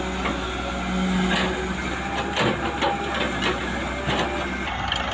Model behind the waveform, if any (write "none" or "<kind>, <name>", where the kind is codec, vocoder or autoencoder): none